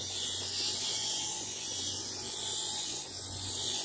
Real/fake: fake